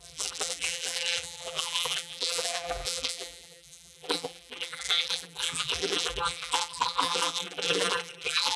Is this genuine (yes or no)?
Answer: no